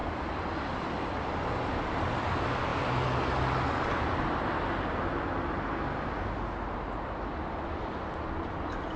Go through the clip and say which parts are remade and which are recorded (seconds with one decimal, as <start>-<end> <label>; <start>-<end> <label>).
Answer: 0.0-9.0 recorded